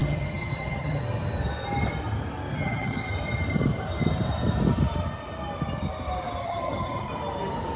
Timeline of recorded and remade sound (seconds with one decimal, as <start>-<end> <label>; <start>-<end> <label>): 0.0-1.0 remade; 1.0-2.5 recorded; 2.5-3.1 remade; 3.1-6.4 recorded; 6.4-7.1 remade; 7.1-7.8 recorded